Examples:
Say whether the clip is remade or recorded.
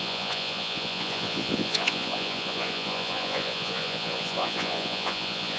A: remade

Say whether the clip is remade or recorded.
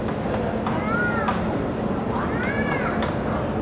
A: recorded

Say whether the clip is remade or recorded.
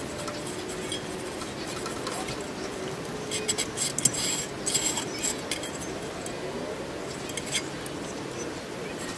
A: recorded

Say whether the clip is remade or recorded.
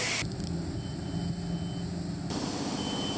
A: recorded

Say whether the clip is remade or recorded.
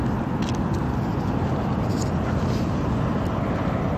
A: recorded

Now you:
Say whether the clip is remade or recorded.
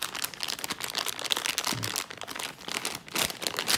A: recorded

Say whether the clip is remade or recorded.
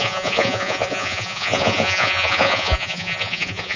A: remade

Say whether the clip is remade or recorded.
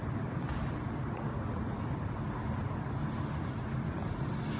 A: recorded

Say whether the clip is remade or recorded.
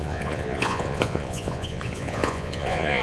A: remade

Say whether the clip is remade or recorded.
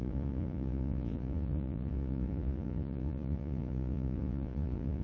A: remade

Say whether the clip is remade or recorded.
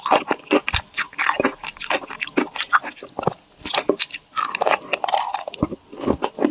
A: recorded